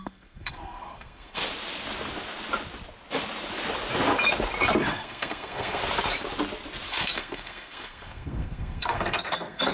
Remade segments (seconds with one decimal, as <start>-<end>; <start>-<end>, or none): 0.0-1.4; 4.9-5.8; 6.9-9.7